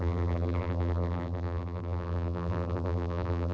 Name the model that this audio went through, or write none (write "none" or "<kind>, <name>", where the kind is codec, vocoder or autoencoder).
vocoder, BigVGAN v2